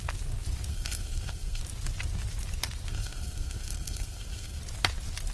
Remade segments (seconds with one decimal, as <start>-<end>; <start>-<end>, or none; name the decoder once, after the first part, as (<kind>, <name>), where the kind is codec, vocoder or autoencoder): 0.7-1.6 (codec, SNAC); 2.9-4.6